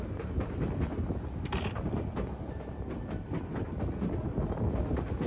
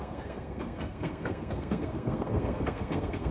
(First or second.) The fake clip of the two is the second